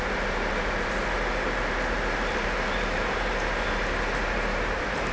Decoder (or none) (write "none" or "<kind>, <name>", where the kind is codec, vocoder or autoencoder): vocoder, BigVGAN v2